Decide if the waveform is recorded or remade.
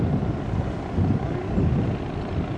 recorded